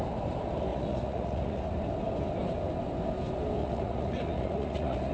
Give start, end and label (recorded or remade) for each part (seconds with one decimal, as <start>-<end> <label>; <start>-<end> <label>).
0.0-0.7 recorded; 0.7-1.6 remade; 1.6-3.6 recorded; 3.6-5.1 remade